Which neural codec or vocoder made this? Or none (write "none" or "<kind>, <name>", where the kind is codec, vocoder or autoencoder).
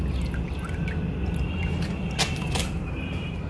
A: none